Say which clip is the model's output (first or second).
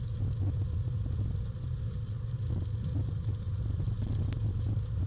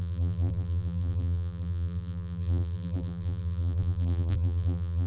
second